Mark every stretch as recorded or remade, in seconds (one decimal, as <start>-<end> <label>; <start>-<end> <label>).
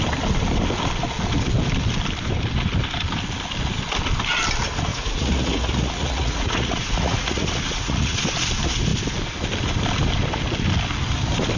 0.0-4.9 recorded; 4.9-8.2 remade; 8.2-11.6 recorded